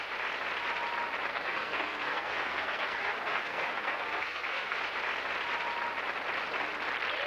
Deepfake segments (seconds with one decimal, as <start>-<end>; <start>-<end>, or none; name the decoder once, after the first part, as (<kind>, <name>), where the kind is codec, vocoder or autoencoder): 1.3-4.8 (codec, SNAC)